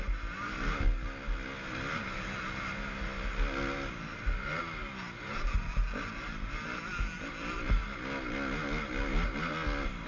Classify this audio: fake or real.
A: real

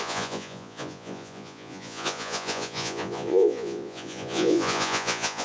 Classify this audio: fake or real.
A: fake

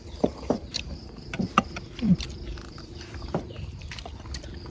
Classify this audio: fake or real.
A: fake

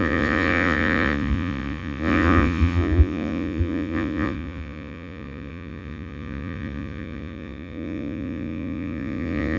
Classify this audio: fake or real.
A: fake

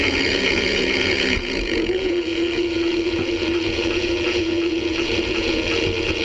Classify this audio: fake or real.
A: fake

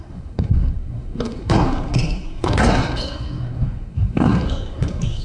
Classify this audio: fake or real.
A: fake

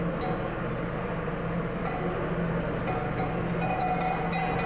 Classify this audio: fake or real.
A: real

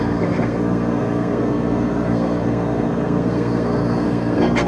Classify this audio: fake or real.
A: fake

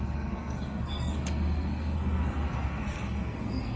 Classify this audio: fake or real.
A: fake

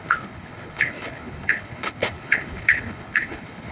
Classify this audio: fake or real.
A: fake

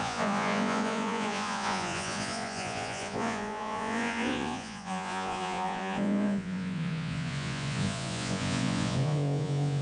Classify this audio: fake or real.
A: fake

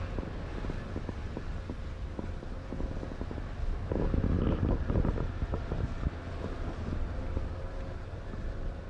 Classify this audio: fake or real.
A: real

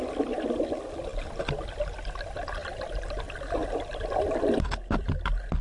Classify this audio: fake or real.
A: real